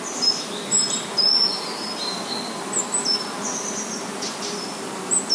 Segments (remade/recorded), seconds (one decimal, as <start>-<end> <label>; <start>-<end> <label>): 0.0-5.3 recorded